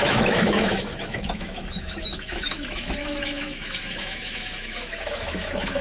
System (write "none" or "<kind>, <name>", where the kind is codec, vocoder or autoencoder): autoencoder, DAC-VAE